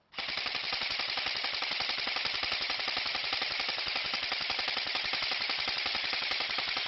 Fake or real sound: real